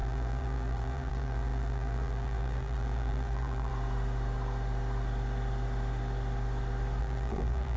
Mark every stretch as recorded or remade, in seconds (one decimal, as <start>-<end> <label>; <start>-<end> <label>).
0.0-3.7 remade; 3.7-7.0 recorded; 7.0-7.8 remade